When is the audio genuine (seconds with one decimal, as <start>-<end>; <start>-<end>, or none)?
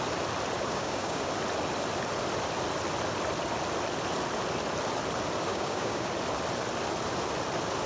0.0-0.7; 1.3-5.5; 6.1-7.9